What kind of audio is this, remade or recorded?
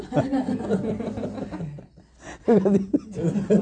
recorded